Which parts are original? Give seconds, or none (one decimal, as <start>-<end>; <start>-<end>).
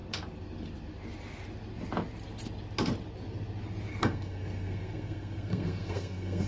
0.0-3.9